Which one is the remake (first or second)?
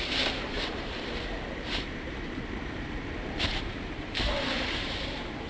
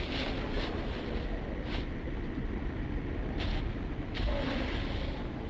first